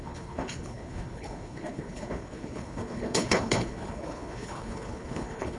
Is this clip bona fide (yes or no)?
no